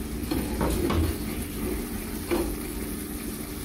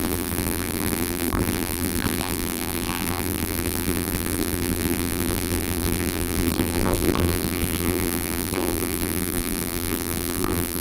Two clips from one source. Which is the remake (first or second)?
second